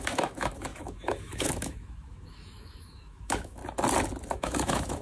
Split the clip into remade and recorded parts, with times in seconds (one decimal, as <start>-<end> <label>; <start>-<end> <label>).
0.0-3.6 remade; 3.6-4.3 recorded; 4.3-5.0 remade